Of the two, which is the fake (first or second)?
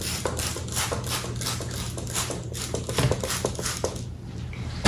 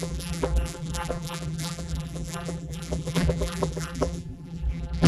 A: second